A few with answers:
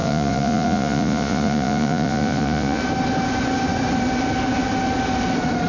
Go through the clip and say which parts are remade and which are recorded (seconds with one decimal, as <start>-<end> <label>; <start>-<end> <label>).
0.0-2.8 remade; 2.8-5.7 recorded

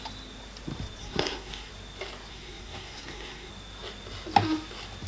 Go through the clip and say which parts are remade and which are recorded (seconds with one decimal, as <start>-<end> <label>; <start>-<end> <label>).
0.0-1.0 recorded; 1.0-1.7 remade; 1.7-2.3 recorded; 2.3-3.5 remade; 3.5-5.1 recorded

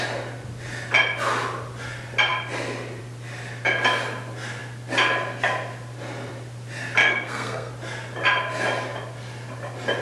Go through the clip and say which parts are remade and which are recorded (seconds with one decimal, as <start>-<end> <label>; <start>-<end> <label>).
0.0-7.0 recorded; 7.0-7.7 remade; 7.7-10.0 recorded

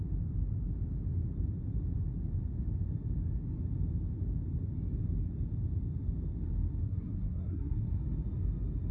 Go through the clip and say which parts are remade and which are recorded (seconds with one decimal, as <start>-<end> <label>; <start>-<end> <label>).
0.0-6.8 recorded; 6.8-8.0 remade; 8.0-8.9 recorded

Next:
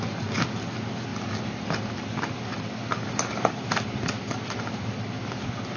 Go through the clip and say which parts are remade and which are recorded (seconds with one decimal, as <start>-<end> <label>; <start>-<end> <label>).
0.0-1.1 remade; 1.1-4.6 recorded; 4.6-5.8 remade